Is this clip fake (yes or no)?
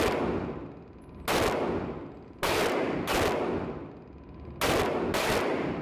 no